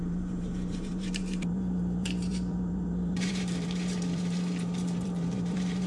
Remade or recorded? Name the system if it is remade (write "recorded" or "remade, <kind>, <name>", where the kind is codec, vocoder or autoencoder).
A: remade, vocoder, BigVGAN v2